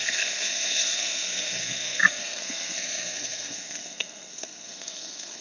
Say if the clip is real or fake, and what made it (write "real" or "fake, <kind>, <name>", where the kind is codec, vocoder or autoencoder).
fake, codec, SNAC